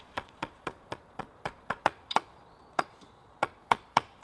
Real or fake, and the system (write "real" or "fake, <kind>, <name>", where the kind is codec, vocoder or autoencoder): fake, vocoder, Vocos